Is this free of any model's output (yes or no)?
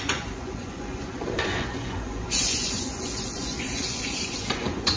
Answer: no